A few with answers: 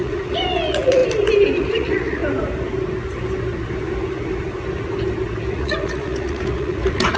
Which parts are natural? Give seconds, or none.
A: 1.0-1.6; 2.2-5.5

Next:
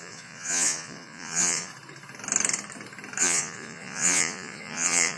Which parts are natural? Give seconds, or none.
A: 1.7-3.2

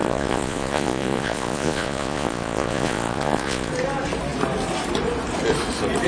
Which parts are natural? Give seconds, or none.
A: 3.7-6.1

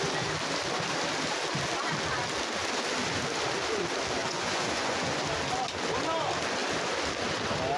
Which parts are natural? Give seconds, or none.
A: 0.0-4.2; 5.2-7.8